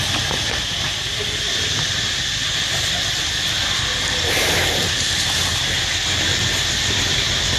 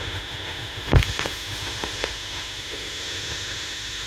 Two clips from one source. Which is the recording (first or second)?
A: first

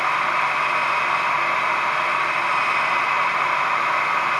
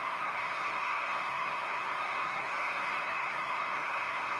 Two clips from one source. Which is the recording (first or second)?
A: first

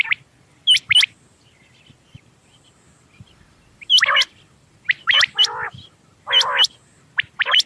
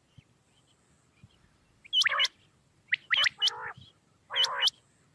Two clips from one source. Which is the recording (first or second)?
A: second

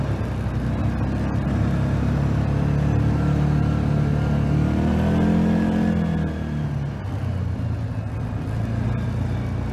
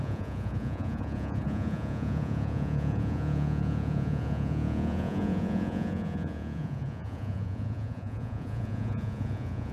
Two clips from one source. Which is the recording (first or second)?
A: first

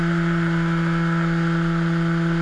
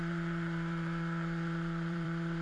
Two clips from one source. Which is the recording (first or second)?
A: first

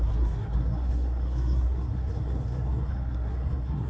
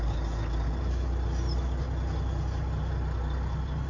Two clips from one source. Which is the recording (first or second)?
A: second